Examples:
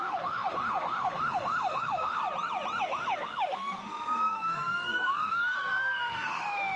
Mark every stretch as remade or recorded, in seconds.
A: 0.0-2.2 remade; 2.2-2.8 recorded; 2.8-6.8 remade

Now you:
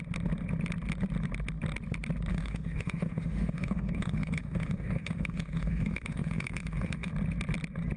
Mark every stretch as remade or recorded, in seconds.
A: 0.0-2.3 recorded; 2.3-7.1 remade; 7.1-8.0 recorded